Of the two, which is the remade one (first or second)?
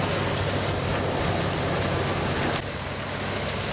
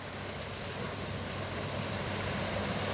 second